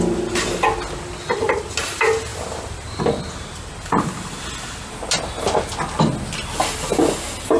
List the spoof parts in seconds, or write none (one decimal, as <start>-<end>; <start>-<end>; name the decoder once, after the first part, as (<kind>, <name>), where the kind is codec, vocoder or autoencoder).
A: none